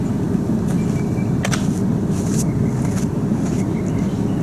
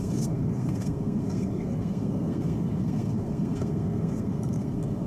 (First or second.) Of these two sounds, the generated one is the second